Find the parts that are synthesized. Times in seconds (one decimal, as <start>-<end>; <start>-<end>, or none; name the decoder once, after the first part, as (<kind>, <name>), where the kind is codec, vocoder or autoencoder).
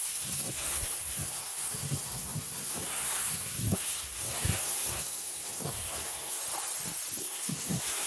0.0-6.4 (codec, SNAC); 7.2-8.1